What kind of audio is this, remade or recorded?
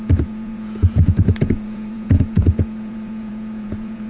remade